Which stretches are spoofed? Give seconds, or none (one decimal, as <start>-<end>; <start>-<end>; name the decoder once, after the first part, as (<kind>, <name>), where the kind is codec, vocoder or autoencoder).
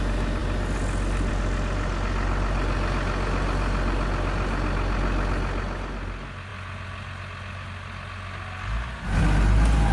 none